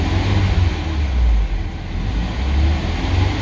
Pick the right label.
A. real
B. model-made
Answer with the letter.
A